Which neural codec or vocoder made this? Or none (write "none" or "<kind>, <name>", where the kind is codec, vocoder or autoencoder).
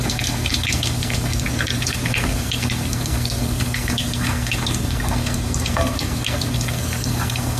codec, SNAC